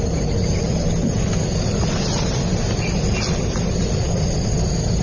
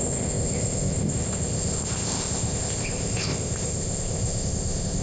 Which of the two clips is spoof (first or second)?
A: second